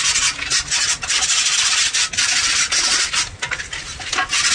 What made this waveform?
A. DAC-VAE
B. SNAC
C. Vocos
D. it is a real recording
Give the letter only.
D